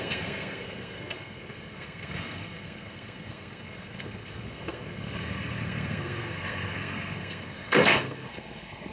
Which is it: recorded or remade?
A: remade